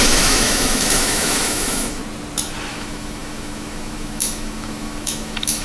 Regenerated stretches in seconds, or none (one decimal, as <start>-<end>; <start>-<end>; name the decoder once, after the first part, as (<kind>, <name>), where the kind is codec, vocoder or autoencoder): 0.0-2.0 (autoencoder, DAC-VAE); 2.7-5.6